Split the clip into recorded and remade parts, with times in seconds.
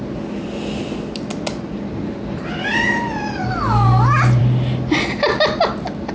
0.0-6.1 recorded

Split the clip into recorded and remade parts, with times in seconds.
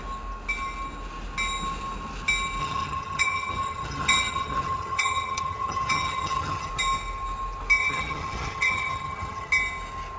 0.0-2.6 recorded; 2.6-6.7 remade; 6.7-7.8 recorded; 7.8-9.5 remade; 9.5-10.2 recorded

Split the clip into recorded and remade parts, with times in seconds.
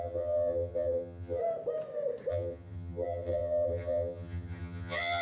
0.0-1.4 remade; 1.4-2.3 recorded; 2.3-5.2 remade